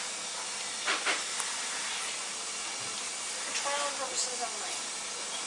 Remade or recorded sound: recorded